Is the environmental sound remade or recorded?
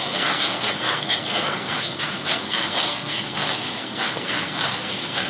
remade